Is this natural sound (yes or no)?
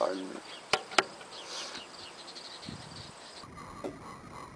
yes